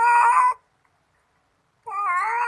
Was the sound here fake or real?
real